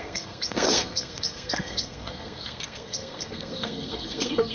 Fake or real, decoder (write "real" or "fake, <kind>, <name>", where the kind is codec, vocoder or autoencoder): fake, codec, SNAC